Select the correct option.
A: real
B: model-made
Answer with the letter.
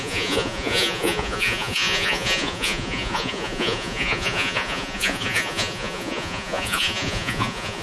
B